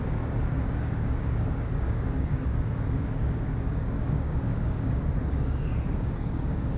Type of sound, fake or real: fake